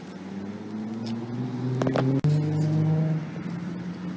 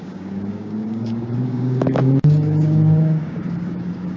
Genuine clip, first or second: first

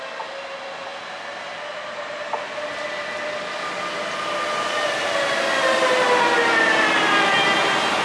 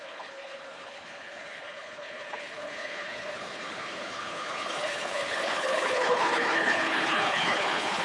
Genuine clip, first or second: first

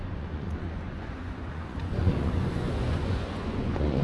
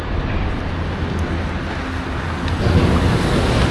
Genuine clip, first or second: second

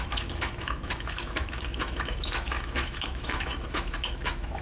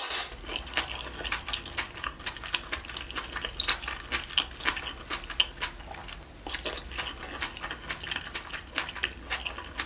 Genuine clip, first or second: second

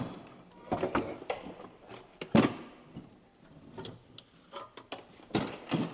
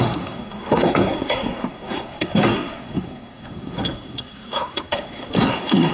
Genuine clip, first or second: first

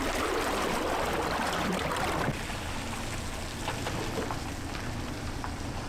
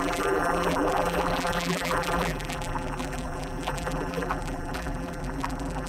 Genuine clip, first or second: first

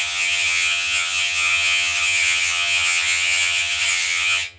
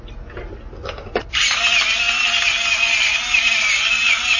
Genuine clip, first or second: second